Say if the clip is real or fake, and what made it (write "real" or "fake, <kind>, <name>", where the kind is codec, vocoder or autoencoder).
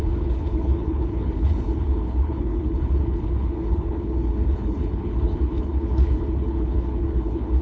fake, codec, HILCodec